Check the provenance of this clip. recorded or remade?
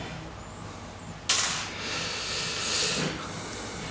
recorded